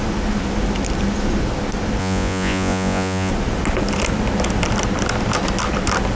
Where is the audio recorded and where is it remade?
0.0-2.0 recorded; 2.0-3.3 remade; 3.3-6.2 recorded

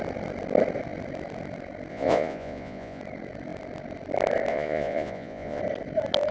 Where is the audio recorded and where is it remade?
0.0-1.9 recorded; 1.9-3.0 remade; 3.0-4.5 recorded; 4.5-5.6 remade; 5.6-6.3 recorded

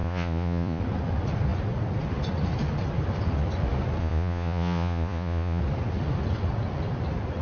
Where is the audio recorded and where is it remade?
0.0-0.8 remade; 0.8-4.0 recorded; 4.0-5.6 remade; 5.6-7.4 recorded

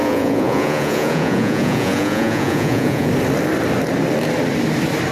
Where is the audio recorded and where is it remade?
0.0-3.1 remade; 3.1-5.1 recorded

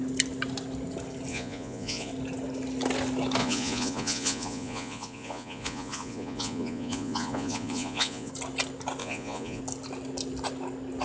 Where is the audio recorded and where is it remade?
0.0-1.3 recorded; 1.3-2.1 remade; 2.1-3.4 recorded; 3.4-8.3 remade; 8.3-9.0 recorded; 9.0-9.6 remade; 9.6-11.0 recorded